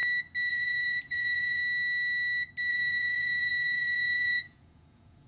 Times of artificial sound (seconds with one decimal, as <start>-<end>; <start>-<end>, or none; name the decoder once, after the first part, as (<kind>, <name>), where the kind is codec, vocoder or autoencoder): 0.5-1.6 (vocoder, Vocos); 2.7-5.3